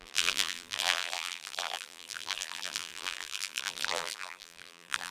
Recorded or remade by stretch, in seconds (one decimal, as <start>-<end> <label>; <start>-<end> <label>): 0.0-5.1 remade